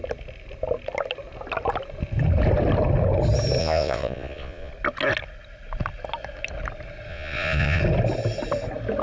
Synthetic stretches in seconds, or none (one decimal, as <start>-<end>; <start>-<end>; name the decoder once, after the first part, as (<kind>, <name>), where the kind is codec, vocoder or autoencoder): 3.6-4.7 (vocoder, Vocos); 7.1-7.8